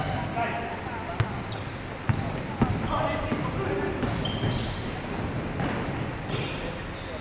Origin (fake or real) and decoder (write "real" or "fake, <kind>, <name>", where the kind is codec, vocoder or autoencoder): real